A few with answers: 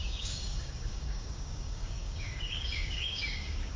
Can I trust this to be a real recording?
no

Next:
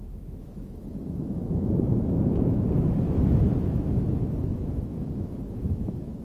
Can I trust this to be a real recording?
no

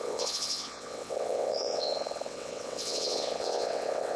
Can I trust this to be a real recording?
no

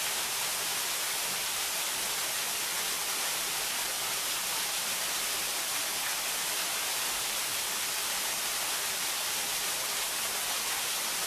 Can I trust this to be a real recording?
yes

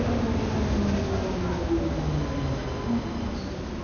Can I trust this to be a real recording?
yes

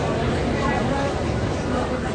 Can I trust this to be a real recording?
yes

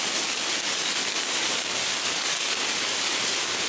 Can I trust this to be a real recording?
no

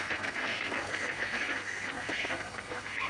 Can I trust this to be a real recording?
no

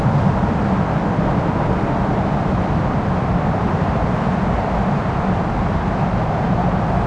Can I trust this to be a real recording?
no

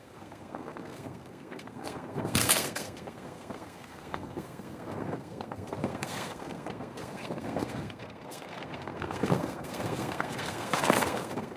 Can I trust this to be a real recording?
no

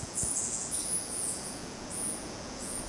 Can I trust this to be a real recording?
no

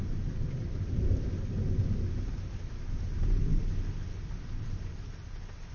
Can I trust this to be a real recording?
yes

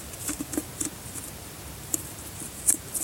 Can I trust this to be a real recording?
no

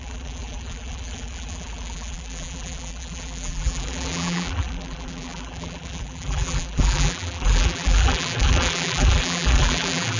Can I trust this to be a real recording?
no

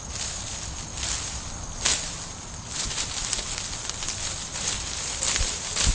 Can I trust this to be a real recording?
yes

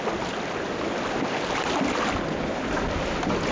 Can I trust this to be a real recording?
yes